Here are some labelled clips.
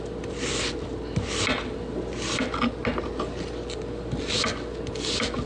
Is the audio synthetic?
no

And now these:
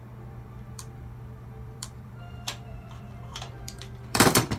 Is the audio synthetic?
yes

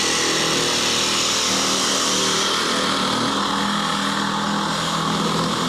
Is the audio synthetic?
no